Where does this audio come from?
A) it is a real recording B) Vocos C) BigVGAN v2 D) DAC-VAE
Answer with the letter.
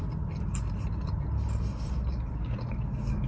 A